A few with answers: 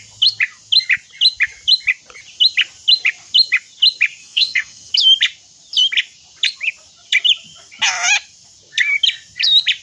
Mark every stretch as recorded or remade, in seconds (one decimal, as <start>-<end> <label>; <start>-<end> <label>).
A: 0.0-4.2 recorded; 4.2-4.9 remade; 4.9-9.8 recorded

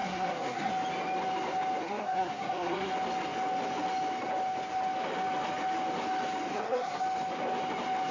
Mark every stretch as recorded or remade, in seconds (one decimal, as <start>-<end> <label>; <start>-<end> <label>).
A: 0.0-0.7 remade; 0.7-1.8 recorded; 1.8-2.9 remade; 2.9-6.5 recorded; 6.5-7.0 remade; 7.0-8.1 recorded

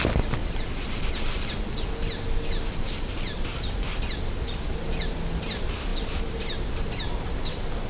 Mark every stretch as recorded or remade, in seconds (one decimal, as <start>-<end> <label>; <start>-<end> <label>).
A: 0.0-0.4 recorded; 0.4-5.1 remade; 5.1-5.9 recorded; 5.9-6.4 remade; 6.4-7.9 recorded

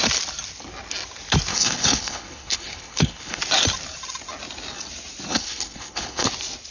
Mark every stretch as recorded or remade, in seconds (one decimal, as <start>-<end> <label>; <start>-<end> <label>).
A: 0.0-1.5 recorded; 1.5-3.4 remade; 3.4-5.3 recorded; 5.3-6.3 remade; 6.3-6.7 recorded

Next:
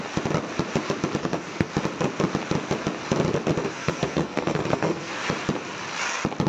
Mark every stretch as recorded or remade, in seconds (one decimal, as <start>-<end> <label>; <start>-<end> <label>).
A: 0.0-1.2 recorded; 1.2-1.7 remade; 1.7-3.6 recorded; 3.6-5.1 remade; 5.1-6.5 recorded

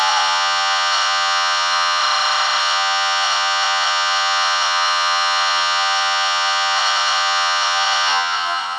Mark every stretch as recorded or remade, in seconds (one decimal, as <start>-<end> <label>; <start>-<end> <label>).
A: 0.0-2.0 remade; 2.0-2.6 recorded; 2.6-8.8 remade

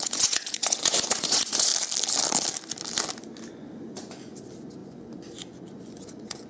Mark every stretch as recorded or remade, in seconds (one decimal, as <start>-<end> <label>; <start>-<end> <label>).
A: 0.0-1.7 remade; 1.7-3.5 recorded; 3.5-6.5 remade

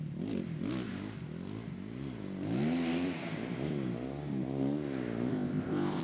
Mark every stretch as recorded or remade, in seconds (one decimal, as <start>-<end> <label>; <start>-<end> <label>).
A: 0.0-5.3 recorded; 5.3-6.0 remade